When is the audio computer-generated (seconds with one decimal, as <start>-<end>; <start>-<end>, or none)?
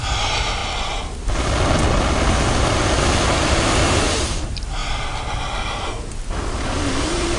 0.0-0.6; 4.2-4.8; 7.0-7.4